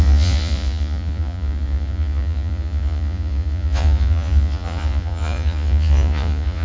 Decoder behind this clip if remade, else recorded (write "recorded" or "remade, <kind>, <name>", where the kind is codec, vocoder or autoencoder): remade, vocoder, Vocos